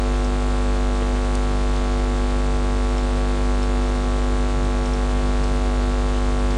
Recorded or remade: recorded